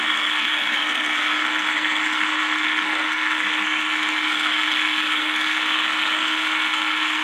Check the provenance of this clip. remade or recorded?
remade